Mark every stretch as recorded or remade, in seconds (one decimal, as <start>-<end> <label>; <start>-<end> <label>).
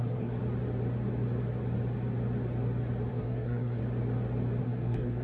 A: 0.0-0.4 remade; 0.4-3.1 recorded; 3.1-3.8 remade; 3.8-4.6 recorded; 4.6-5.2 remade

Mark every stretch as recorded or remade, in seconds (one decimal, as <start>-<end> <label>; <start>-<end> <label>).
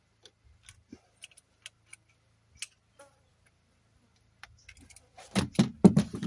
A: 0.0-6.3 recorded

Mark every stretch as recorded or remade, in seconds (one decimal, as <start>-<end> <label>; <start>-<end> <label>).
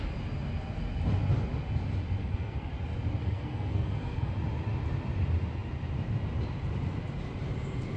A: 0.0-2.2 recorded; 2.2-2.7 remade; 2.7-3.2 recorded; 3.2-4.3 remade; 4.3-8.0 recorded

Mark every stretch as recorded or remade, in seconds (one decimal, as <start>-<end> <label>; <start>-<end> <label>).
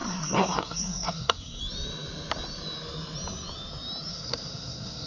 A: 0.0-1.6 remade; 1.6-4.1 recorded; 4.1-5.1 remade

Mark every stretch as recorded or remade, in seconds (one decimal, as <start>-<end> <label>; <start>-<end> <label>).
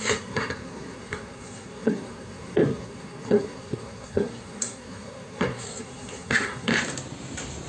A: 0.0-6.7 remade; 6.7-7.7 recorded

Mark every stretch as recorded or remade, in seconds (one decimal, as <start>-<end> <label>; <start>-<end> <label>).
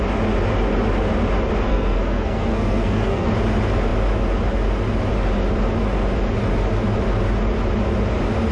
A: 0.0-1.7 recorded; 1.7-3.3 remade; 3.3-8.5 recorded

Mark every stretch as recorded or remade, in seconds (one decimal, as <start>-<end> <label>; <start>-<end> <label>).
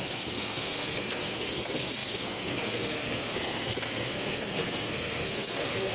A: 0.0-5.9 remade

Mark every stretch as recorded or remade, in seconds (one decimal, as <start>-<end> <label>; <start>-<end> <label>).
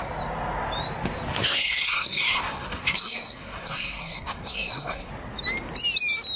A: 0.0-1.3 recorded; 1.3-5.1 remade; 5.1-6.4 recorded